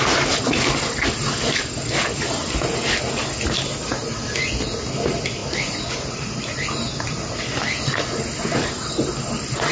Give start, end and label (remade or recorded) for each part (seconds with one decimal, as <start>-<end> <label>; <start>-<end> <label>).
0.0-9.7 recorded